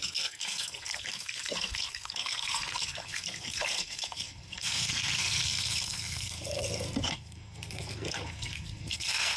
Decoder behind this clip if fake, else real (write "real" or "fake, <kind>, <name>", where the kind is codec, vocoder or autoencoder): fake, codec, SNAC